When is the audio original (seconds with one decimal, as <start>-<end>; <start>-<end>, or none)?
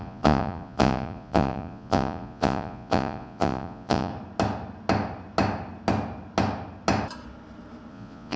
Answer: 4.1-7.9